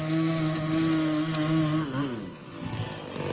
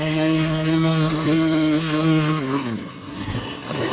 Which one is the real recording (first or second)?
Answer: first